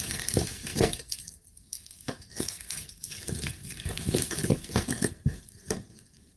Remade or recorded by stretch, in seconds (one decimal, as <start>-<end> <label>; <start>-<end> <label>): 0.0-6.4 remade